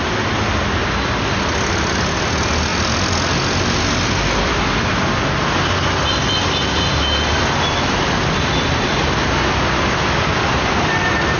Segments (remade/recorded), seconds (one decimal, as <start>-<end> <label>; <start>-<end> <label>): 0.0-11.4 recorded